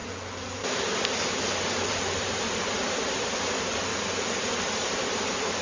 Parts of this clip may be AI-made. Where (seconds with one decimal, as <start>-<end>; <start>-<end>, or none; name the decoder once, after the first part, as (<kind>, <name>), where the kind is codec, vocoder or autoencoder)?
0.0-3.4 (vocoder, BigVGAN v2)